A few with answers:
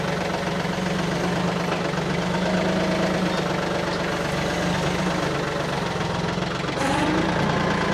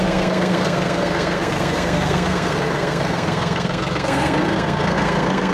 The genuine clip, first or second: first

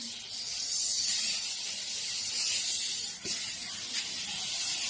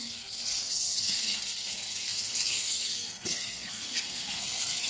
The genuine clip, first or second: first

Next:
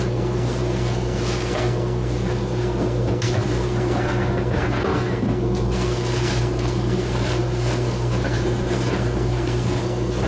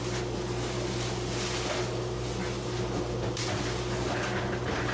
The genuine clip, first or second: second